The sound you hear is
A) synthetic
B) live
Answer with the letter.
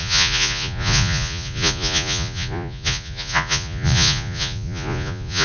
A